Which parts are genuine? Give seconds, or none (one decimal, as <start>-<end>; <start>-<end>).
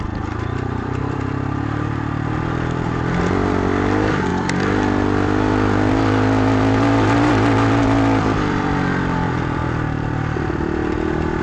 9.6-10.2